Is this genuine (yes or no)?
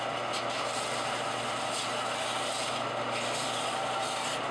yes